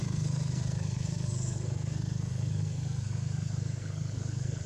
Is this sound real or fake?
fake